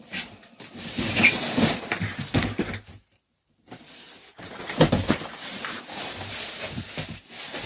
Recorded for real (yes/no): no